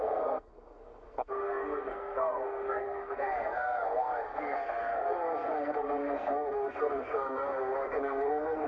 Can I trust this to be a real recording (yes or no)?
no